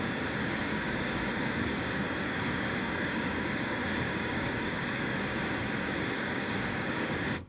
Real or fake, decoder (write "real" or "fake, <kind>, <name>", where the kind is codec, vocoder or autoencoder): fake, codec, DAC